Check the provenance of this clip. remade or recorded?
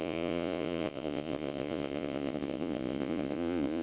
remade